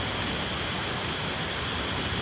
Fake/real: real